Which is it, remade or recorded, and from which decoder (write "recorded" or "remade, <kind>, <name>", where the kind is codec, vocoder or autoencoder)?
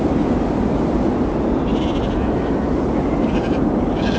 remade, vocoder, BigVGAN v2